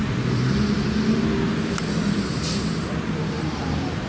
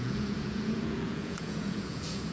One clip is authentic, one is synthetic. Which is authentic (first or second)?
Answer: first